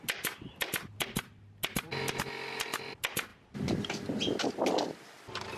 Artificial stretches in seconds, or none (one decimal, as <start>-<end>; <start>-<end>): none